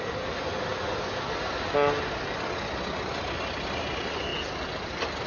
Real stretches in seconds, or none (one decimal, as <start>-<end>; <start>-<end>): 0.7-3.1; 4.3-5.3